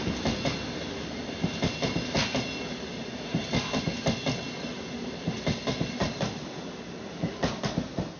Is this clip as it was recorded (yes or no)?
yes